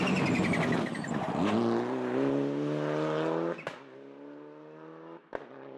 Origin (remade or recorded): recorded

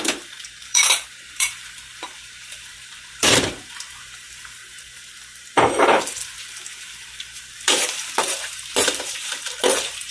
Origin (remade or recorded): remade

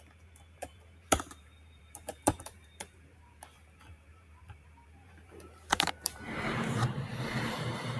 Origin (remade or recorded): remade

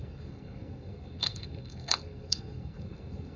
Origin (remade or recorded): remade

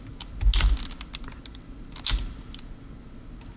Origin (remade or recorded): recorded